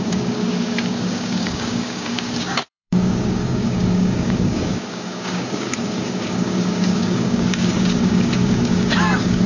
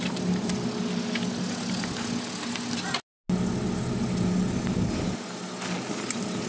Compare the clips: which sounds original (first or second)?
second